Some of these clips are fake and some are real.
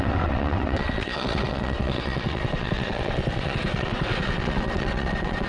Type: fake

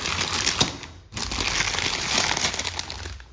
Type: real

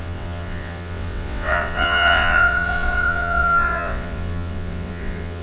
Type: fake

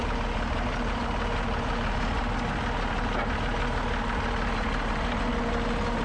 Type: real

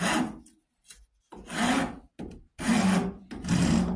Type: real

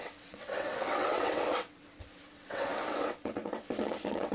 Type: fake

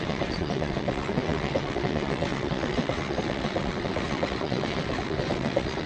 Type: fake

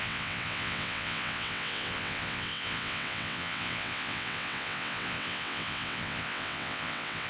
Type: fake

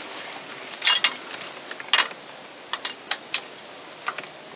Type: real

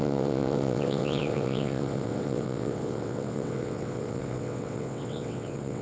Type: fake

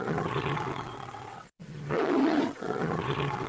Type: fake